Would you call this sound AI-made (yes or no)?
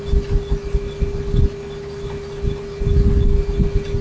no